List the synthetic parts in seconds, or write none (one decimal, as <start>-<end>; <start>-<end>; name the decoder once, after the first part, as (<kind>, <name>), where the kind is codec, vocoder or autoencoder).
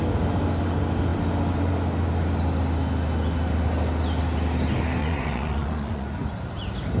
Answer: 5.0-6.5 (vocoder, Vocos)